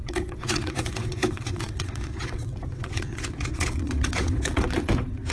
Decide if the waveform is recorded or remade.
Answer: remade